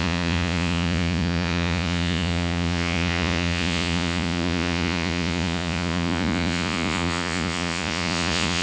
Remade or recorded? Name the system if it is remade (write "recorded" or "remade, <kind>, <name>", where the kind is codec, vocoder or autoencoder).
remade, vocoder, Vocos